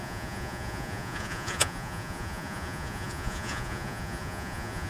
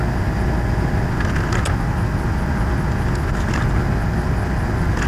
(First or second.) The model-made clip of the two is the first